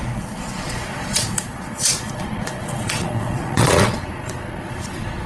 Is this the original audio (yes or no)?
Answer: no